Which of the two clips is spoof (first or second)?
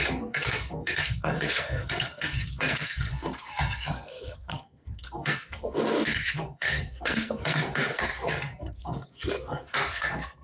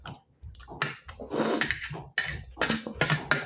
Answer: first